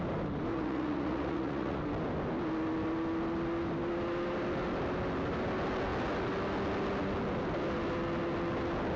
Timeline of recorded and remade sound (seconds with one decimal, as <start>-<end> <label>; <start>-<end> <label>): 0.0-0.5 recorded; 0.5-1.8 remade; 1.8-9.0 recorded